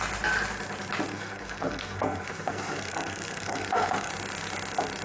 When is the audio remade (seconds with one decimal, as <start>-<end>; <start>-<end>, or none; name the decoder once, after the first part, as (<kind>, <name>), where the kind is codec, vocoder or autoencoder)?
1.1-4.1 (codec, SNAC)